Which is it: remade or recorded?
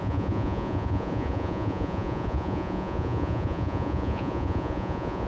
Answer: remade